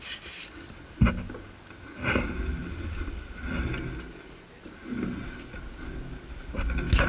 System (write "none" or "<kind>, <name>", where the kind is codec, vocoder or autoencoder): none